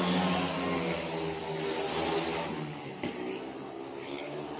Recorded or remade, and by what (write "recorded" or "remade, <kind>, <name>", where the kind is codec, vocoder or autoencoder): recorded